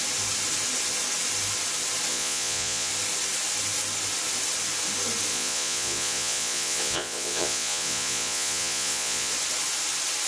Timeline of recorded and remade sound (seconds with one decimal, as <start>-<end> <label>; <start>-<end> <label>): 0.0-2.1 recorded; 2.1-2.9 remade; 2.9-5.3 recorded; 5.3-9.3 remade; 9.3-10.3 recorded